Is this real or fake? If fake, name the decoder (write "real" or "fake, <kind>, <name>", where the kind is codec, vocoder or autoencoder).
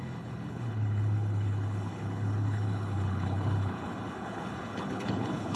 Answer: fake, codec, HILCodec